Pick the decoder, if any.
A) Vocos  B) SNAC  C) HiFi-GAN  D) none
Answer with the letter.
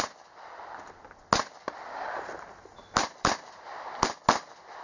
D